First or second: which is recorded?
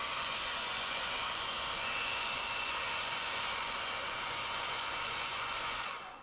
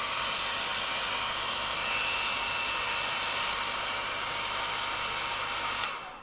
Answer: second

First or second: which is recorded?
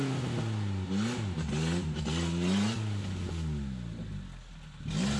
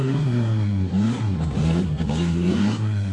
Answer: first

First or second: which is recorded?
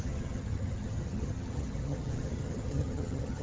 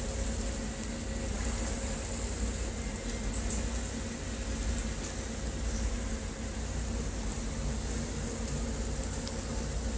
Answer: second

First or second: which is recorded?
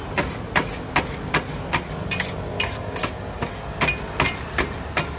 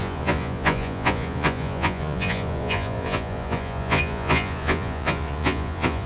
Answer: first